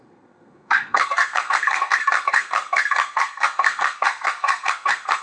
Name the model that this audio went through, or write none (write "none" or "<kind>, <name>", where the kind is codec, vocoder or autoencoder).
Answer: codec, SNAC